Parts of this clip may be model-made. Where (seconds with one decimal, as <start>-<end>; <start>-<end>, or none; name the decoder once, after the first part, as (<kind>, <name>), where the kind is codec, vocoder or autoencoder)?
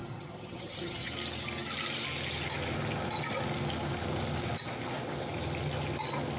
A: 0.0-1.1 (vocoder, HiFi-GAN)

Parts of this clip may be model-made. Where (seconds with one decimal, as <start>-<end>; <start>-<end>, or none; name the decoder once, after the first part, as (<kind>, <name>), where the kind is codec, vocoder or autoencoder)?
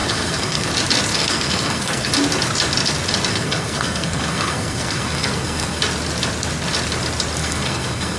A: 0.0-0.7 (codec, SNAC); 1.1-2.1; 3.3-5.8; 7.4-8.2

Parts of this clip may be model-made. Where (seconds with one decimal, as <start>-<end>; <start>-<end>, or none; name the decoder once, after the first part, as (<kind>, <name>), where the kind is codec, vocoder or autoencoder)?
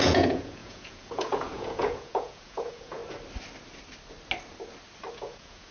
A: 0.0-3.0 (vocoder, Vocos); 5.1-5.7